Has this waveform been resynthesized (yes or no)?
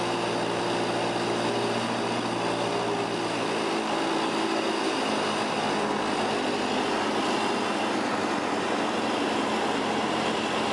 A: no